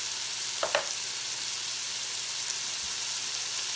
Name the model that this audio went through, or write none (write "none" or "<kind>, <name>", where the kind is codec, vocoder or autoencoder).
none